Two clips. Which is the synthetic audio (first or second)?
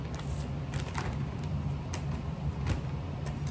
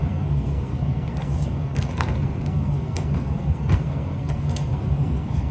second